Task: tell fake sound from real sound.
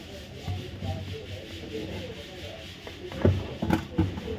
real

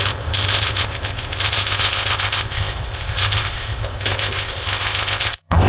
fake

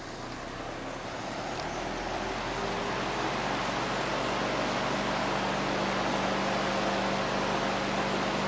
real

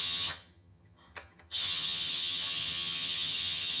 fake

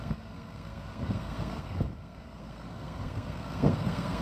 fake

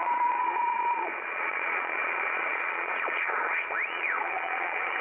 fake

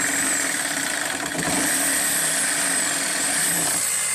real